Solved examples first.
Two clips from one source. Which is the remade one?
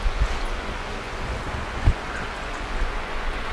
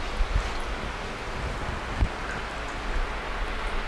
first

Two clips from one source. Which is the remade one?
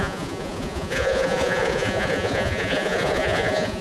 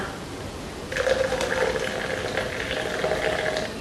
first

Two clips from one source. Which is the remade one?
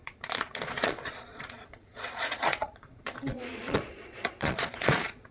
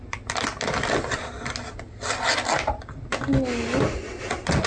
first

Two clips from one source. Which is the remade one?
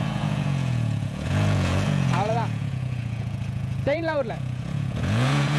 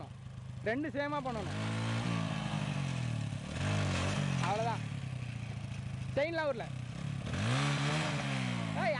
first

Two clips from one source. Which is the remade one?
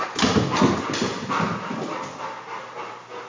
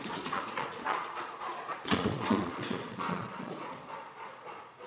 second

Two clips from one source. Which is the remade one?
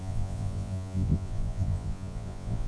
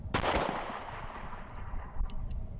first